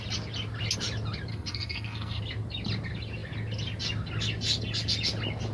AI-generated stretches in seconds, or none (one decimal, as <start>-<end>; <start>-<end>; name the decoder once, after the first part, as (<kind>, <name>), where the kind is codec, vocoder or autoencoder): 1.3-2.2 (codec, SNAC)